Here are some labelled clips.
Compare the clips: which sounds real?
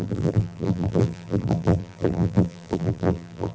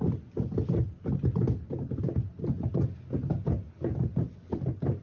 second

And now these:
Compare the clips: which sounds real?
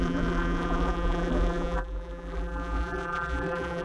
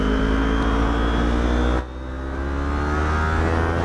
second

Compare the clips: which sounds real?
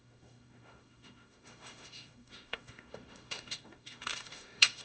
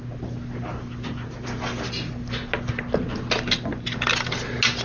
second